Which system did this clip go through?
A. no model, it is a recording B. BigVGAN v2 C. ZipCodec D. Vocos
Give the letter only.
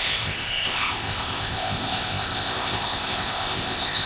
C